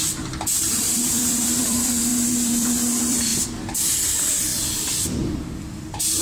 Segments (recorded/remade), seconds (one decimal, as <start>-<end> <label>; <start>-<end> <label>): 0.0-3.3 remade; 3.3-4.0 recorded; 4.0-4.5 remade; 4.5-6.2 recorded